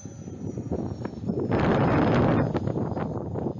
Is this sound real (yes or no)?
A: yes